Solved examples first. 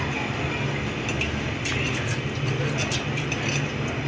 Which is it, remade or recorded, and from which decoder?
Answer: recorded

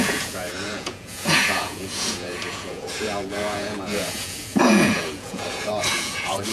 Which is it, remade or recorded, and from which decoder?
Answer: remade, vocoder, Vocos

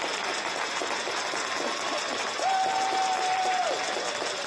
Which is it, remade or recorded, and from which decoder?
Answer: recorded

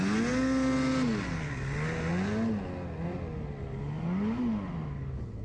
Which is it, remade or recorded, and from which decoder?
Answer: recorded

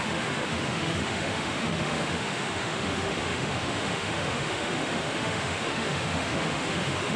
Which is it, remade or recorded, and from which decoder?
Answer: remade, autoencoder, DAC-VAE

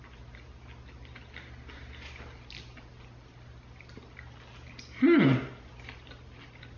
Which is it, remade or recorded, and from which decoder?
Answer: recorded